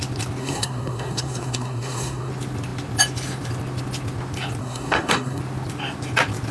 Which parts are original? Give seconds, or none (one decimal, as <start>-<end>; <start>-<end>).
0.0-0.4; 2.3-4.6; 5.4-6.5